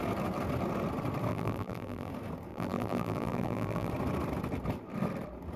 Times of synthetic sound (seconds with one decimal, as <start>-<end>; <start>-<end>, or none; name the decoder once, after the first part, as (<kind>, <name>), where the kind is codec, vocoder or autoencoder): 1.3-2.1 (vocoder, BigVGAN v2); 2.5-3.9